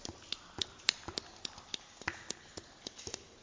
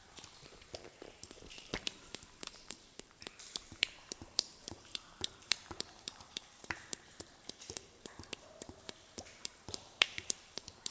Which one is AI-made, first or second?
second